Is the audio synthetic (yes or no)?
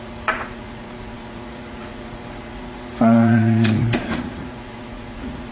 yes